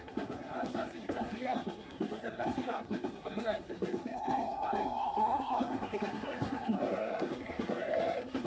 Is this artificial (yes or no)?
yes